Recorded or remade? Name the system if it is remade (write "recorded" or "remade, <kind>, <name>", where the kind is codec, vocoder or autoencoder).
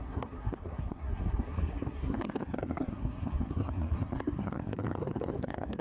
remade, codec, SNAC